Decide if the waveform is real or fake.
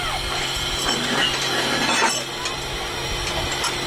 real